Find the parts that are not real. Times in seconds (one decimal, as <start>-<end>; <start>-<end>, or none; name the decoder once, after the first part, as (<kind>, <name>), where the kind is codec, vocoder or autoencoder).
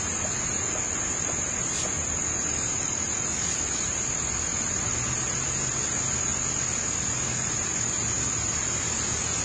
none